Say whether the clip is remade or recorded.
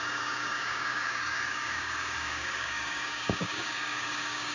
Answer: remade